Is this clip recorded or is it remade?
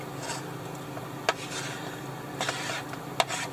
recorded